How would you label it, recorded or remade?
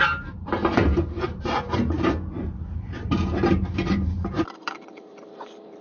remade